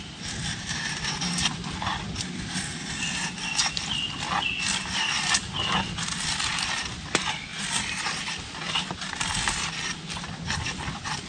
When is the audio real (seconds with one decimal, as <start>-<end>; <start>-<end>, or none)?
0.0-11.3